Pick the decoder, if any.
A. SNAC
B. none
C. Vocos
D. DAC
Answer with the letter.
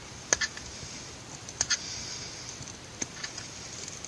B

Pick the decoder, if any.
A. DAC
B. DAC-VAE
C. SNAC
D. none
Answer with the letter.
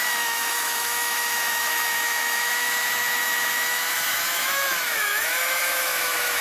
B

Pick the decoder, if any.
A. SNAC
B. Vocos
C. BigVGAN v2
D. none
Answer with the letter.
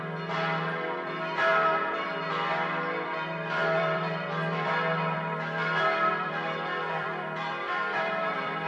C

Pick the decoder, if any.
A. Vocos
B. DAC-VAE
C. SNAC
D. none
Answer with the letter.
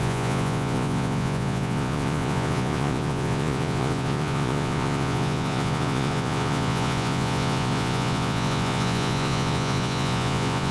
A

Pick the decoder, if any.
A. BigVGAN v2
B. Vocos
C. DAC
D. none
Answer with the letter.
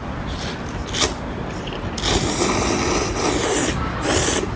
D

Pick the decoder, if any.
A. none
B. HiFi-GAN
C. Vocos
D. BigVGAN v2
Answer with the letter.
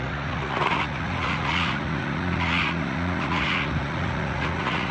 C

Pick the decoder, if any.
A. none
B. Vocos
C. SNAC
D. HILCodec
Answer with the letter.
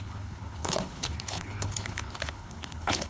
D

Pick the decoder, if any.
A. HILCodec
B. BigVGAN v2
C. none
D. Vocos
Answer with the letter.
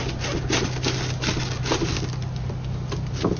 C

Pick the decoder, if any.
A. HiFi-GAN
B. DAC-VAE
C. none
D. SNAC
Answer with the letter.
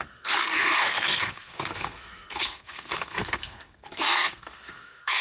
D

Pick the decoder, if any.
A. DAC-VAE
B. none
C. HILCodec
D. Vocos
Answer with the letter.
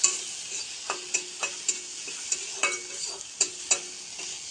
B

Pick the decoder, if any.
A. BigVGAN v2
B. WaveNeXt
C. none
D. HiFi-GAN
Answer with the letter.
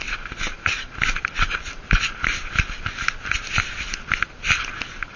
C